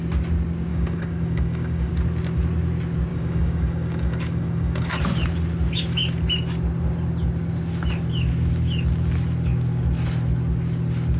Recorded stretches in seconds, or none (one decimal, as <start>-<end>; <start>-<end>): 0.0-0.7; 1.9-3.1; 5.0-11.2